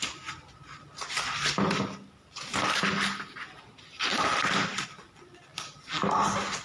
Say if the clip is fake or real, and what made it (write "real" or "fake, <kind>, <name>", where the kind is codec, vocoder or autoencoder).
fake, vocoder, BigVGAN v2